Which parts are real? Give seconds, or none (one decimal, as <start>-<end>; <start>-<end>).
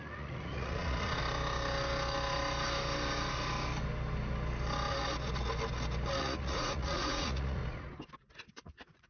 1.2-6.2; 7.6-8.5